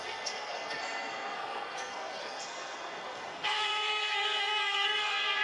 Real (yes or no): no